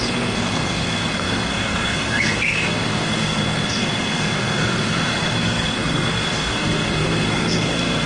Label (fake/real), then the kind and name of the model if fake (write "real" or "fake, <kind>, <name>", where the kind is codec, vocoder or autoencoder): fake, codec, SNAC